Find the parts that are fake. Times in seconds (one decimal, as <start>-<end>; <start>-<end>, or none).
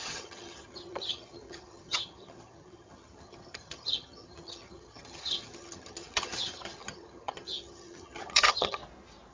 0.0-8.8